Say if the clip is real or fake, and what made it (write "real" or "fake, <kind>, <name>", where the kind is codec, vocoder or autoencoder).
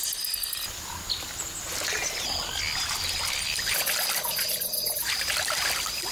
real